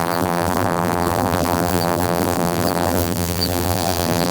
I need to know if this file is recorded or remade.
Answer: remade